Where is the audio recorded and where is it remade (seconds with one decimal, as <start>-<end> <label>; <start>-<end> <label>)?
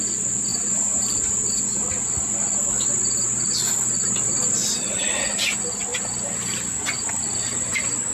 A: 0.0-0.5 recorded; 0.5-1.6 remade; 1.6-8.1 recorded